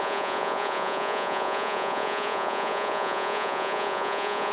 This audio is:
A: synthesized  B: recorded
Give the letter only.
A